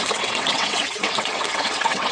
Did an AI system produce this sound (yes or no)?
yes